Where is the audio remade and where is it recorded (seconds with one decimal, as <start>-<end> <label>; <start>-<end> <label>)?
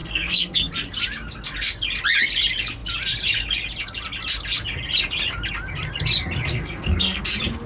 0.0-0.7 remade; 0.7-6.5 recorded; 6.5-7.2 remade; 7.2-7.7 recorded